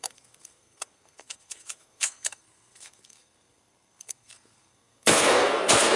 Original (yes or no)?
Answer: no